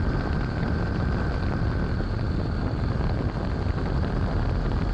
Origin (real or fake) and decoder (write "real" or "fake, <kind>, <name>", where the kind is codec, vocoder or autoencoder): real